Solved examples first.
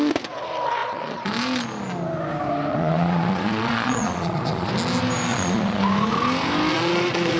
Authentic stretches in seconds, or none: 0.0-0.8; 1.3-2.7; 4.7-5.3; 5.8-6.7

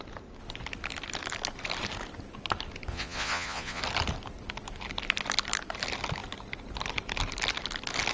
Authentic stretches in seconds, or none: 0.0-2.9; 3.8-8.1